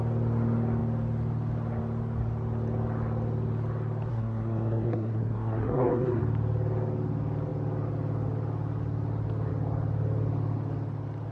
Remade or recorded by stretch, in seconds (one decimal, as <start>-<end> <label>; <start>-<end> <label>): 0.0-4.1 recorded; 4.1-6.2 remade; 6.2-11.3 recorded